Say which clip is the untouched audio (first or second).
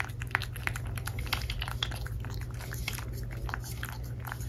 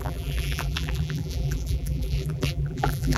first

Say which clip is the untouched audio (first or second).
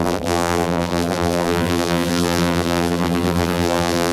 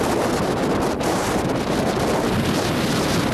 second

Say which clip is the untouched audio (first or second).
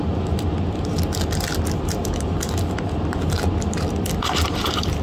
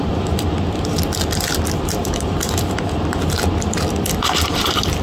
first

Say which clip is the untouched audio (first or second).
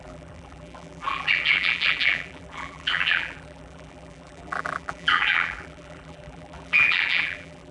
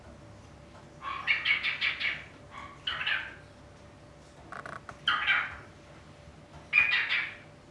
second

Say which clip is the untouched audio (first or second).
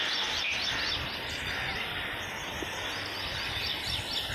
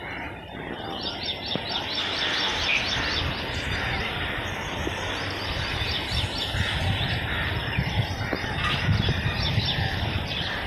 first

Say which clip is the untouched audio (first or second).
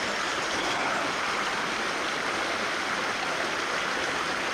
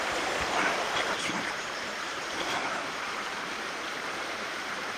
first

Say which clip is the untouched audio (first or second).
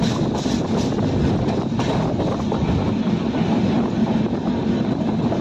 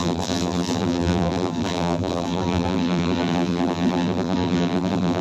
first